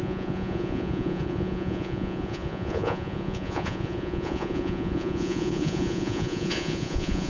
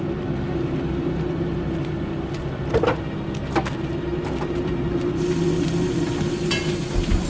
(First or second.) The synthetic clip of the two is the first